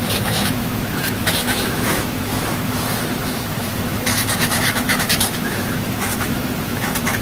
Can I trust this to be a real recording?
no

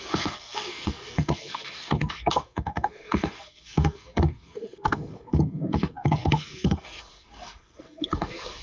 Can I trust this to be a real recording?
no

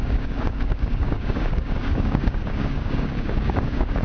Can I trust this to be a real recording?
no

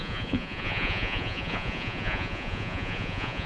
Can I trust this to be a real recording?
no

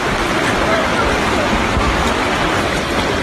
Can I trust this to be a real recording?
yes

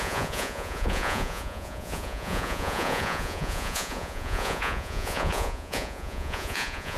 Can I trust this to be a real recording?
no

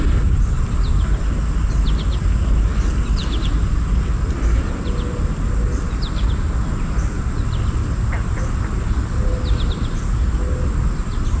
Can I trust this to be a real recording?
yes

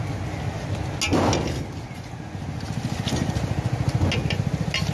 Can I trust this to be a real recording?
yes